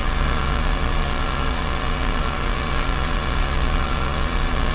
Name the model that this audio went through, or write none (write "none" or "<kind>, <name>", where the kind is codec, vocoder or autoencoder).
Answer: vocoder, Vocos